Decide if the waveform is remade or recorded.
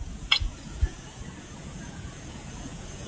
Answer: remade